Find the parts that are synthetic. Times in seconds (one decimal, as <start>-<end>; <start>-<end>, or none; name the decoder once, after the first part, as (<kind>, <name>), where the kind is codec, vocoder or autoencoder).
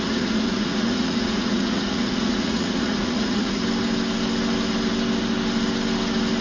0.0-3.6 (vocoder, Vocos)